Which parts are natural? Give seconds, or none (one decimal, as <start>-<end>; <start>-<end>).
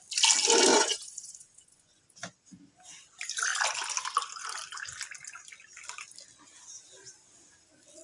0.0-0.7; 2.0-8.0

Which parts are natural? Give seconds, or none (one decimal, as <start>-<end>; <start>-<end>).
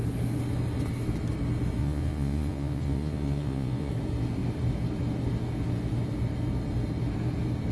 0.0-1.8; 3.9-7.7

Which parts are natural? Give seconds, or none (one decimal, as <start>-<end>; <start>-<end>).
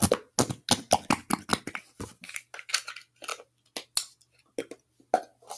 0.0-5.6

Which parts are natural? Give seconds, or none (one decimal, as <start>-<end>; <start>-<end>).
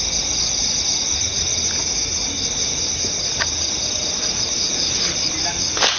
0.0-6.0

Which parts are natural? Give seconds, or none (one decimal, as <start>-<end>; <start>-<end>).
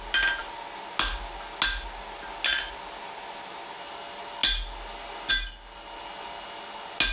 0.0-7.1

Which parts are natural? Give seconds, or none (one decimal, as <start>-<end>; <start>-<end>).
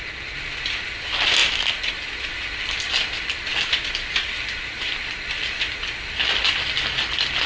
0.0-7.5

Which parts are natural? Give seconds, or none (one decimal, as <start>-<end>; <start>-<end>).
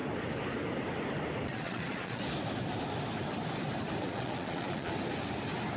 0.0-1.5; 2.2-4.0; 4.9-5.8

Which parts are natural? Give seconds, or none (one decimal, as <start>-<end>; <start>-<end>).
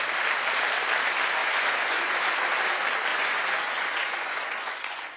0.0-1.4; 2.4-3.1